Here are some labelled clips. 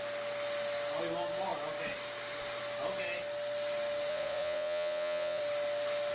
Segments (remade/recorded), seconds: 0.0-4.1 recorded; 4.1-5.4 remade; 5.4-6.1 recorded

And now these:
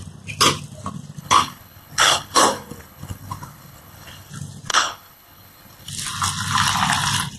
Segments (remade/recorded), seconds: 0.0-1.2 recorded; 1.2-4.3 remade; 4.3-4.7 recorded; 4.7-5.9 remade; 5.9-7.4 recorded

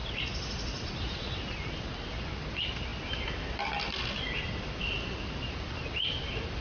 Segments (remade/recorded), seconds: 0.0-6.6 recorded

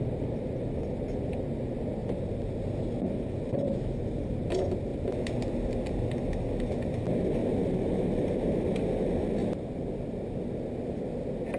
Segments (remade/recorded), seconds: 0.0-7.4 recorded; 7.4-8.2 remade; 8.2-9.4 recorded; 9.4-9.9 remade; 9.9-11.6 recorded

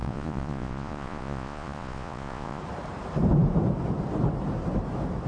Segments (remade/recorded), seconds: 0.0-2.6 remade; 2.6-5.3 recorded